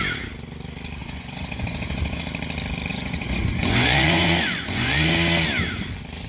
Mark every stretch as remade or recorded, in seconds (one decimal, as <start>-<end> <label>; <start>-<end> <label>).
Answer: 0.0-1.0 recorded; 1.0-2.2 remade; 2.2-2.9 recorded; 2.9-5.1 remade; 5.1-6.3 recorded